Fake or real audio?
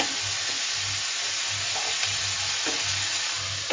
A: real